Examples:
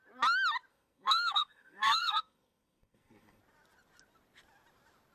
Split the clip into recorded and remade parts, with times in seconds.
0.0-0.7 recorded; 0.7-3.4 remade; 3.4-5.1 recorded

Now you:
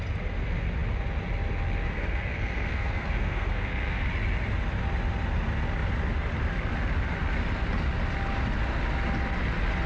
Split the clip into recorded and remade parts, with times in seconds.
0.0-1.9 recorded; 1.9-4.1 remade; 4.1-9.9 recorded

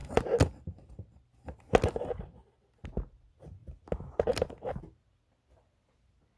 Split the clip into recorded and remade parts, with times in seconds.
0.0-6.4 recorded

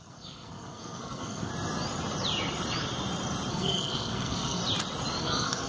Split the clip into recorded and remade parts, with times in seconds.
0.0-1.5 remade; 1.5-3.5 recorded; 3.5-4.6 remade; 4.6-5.2 recorded; 5.2-5.7 remade

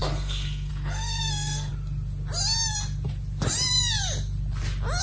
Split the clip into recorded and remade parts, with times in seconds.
0.0-1.7 remade; 1.7-5.0 recorded

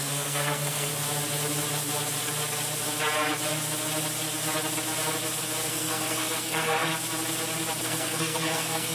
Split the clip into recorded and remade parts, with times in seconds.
0.0-0.9 remade; 0.9-5.7 recorded; 5.7-6.9 remade; 6.9-7.8 recorded; 7.8-8.9 remade